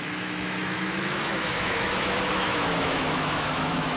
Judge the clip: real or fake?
fake